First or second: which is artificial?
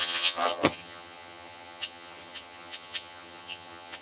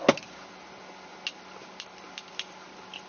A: first